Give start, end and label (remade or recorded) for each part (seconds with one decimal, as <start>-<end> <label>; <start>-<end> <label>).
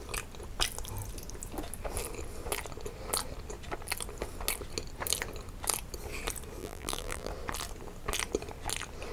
0.0-6.6 recorded; 6.6-7.3 remade; 7.3-9.1 recorded